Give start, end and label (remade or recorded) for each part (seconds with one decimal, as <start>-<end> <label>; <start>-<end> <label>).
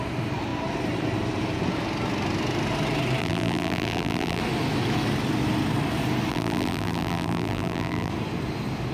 0.0-3.2 recorded; 3.2-4.4 remade; 4.4-6.3 recorded; 6.3-8.1 remade; 8.1-8.9 recorded